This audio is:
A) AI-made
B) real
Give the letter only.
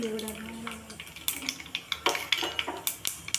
B